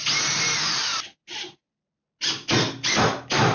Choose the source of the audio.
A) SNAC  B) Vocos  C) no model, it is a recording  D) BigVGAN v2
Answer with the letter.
C